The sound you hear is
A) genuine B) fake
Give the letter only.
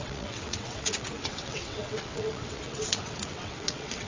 B